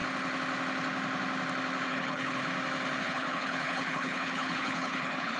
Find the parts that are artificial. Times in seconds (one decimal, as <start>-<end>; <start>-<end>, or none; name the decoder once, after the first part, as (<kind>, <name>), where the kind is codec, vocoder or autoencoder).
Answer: 1.9-2.4 (codec, HILCodec); 3.0-5.4